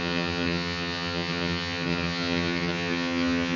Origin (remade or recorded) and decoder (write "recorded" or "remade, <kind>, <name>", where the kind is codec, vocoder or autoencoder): remade, vocoder, HiFi-GAN